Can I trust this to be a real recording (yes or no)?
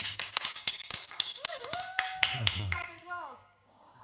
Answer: no